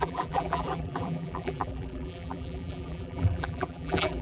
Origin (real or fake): fake